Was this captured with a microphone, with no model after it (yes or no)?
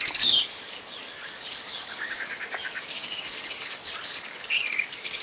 no